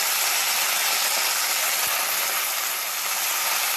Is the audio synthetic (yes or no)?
no